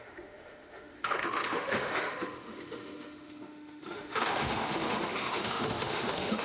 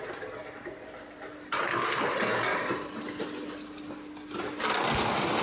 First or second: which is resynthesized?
first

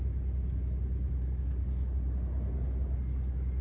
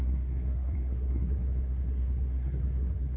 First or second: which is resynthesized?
second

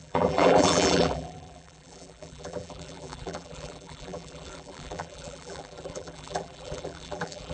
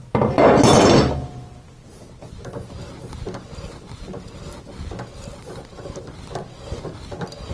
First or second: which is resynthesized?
first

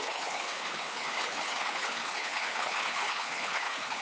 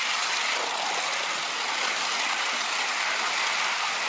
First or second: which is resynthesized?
first